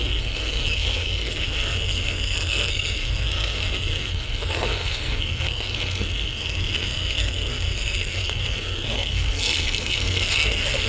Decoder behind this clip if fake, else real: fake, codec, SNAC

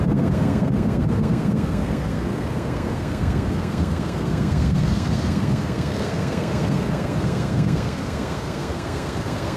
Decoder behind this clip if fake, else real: fake, codec, SNAC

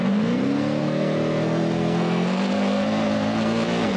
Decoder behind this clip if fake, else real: fake, codec, SNAC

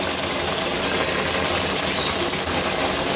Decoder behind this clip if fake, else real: real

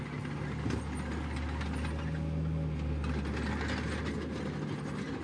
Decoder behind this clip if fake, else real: real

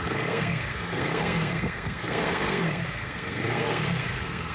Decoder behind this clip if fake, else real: fake, codec, SNAC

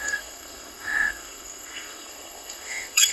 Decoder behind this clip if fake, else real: fake, codec, SNAC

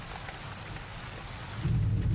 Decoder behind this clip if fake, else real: real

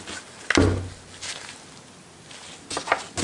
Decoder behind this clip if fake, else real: real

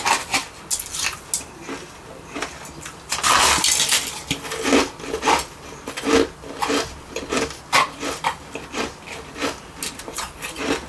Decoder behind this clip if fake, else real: real